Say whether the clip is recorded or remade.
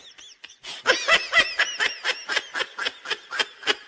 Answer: recorded